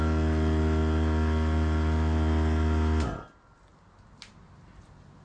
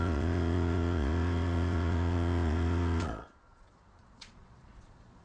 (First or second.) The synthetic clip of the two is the second